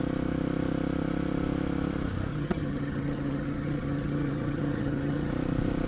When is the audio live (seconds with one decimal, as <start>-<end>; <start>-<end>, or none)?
0.0-2.3; 5.3-5.9